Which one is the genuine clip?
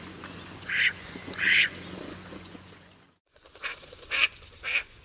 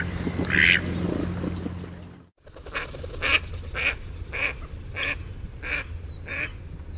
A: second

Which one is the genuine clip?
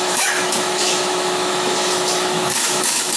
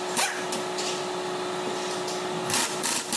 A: second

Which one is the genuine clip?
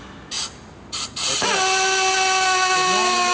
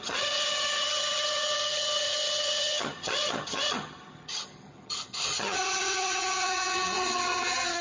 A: first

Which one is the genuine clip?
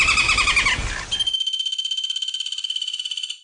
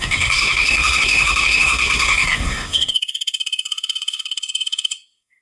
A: first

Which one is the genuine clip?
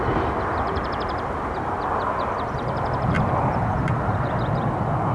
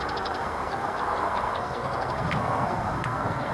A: first